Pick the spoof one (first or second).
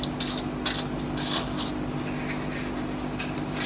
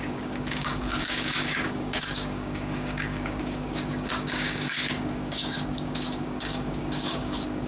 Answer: second